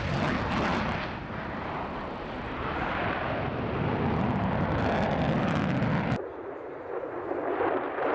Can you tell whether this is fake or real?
real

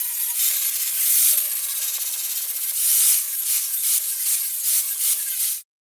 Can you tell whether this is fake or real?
real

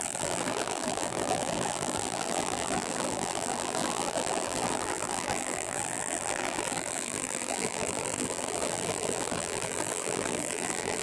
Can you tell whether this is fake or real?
fake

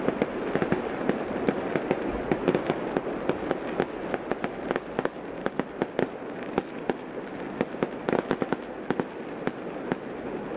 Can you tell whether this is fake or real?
real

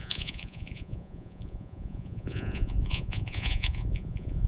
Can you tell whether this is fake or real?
fake